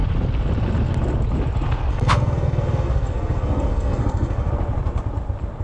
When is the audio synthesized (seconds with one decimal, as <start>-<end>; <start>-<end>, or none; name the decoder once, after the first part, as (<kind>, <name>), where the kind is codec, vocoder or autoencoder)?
1.9-4.5 (codec, SNAC)